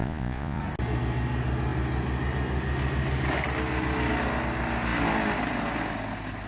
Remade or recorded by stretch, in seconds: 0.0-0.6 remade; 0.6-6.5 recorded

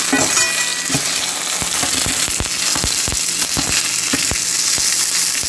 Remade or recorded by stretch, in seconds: 0.0-5.5 recorded

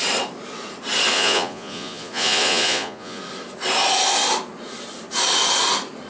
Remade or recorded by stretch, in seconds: 0.0-1.1 recorded; 1.1-3.2 remade; 3.2-6.1 recorded

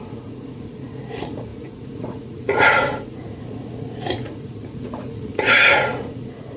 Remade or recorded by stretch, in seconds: 0.0-6.6 remade